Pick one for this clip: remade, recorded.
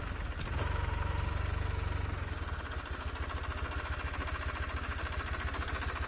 recorded